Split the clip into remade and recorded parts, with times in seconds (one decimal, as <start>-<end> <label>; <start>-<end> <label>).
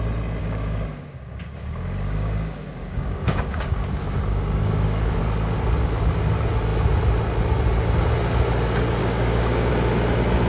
0.0-0.4 recorded; 0.4-5.2 remade; 5.2-9.0 recorded; 9.0-9.7 remade; 9.7-10.5 recorded